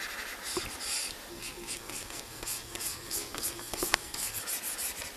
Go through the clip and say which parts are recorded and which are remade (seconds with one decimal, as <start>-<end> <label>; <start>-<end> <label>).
0.0-1.3 recorded; 1.3-4.4 remade; 4.4-5.2 recorded